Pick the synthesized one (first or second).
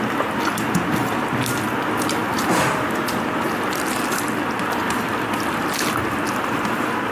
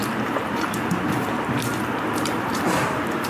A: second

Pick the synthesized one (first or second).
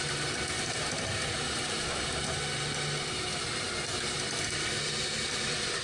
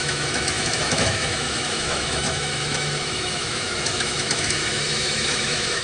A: second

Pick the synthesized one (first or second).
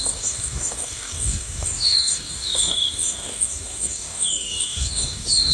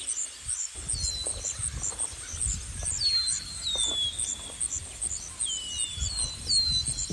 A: first